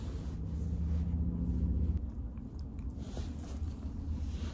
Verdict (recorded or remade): recorded